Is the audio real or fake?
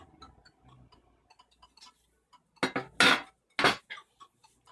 real